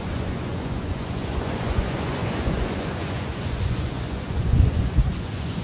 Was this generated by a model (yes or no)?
yes